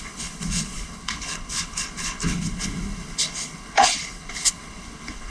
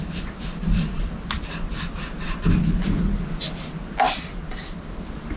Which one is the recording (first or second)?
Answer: second